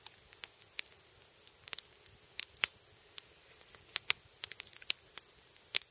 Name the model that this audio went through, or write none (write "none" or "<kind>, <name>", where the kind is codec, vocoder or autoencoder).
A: none